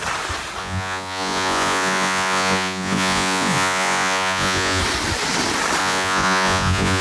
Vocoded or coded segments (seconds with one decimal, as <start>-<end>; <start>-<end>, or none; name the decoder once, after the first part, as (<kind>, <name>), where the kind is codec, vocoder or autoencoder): 0.6-4.8 (vocoder, Vocos); 5.8-7.0